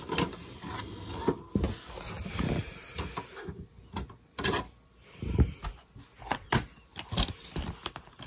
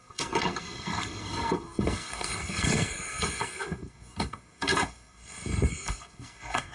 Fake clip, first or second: second